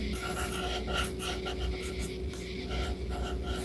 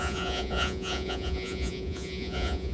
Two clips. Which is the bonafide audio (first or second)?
first